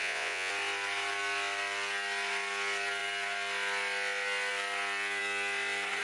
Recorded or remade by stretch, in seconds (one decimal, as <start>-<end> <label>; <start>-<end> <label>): 0.0-0.5 remade; 0.5-6.0 recorded